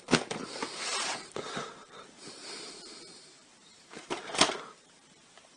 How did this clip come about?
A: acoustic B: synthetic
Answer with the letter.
B